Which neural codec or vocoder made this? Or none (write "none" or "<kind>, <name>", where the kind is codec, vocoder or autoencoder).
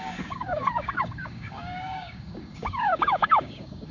codec, DAC